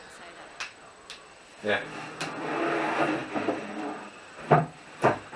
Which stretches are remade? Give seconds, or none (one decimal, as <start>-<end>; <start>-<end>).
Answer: none